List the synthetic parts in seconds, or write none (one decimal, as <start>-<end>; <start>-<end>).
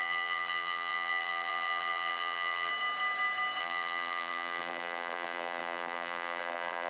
0.0-2.7; 3.6-6.9